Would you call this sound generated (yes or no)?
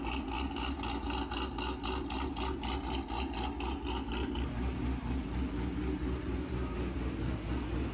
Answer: no